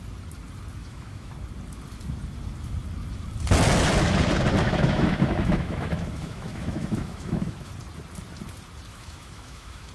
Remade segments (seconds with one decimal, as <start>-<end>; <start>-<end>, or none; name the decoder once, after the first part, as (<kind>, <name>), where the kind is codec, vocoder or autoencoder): 0.8-1.3 (autoencoder, DAC-VAE); 4.6-7.7; 8.9-9.9